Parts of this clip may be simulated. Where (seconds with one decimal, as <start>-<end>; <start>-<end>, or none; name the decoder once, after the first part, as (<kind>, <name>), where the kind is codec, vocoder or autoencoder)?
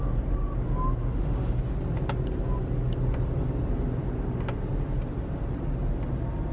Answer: 1.0-1.6 (autoencoder, DAC-VAE)